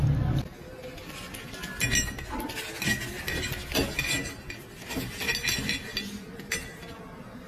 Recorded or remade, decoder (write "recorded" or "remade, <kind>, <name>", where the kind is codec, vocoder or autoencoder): recorded